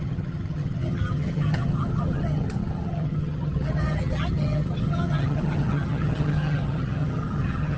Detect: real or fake fake